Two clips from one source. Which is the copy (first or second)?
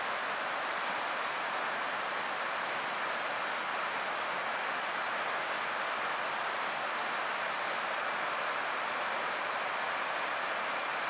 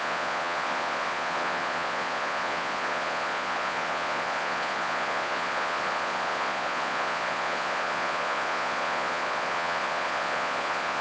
second